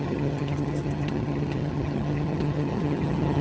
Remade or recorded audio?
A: remade